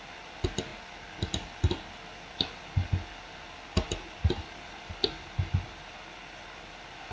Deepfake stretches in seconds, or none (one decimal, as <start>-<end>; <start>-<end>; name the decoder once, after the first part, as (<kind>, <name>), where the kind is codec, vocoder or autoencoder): none